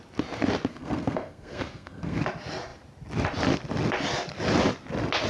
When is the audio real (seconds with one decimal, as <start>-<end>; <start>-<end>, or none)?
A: 0.0-0.7; 2.2-5.3